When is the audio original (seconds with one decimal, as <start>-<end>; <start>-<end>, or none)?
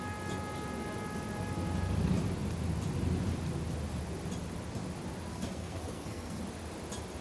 0.0-5.3; 6.4-7.2